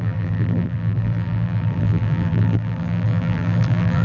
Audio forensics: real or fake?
fake